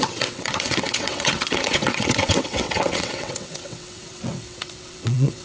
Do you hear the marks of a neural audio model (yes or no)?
yes